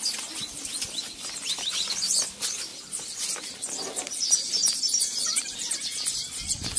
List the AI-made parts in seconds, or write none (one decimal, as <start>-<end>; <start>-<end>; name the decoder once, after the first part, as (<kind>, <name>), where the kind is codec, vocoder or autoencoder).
2.7-6.8 (vocoder, BigVGAN v2)